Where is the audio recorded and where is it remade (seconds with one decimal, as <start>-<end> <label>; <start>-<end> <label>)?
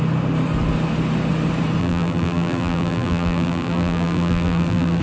0.0-1.8 recorded; 1.8-5.0 remade